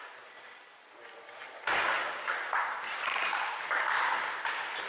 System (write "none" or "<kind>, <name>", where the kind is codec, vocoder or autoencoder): none